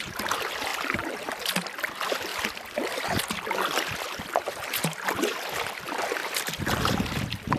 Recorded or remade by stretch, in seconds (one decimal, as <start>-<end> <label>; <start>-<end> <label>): 0.0-0.7 recorded; 0.7-1.3 remade; 1.3-2.3 recorded; 2.3-3.2 remade; 3.2-6.2 recorded; 6.2-7.6 remade